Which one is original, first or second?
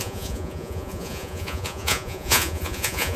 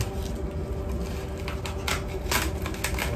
second